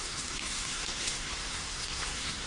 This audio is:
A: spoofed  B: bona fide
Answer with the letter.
A